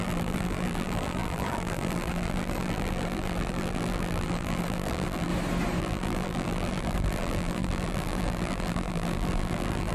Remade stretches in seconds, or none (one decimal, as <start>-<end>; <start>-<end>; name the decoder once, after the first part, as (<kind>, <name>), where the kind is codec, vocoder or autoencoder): 0.0-5.3 (vocoder, BigVGAN v2); 5.8-9.9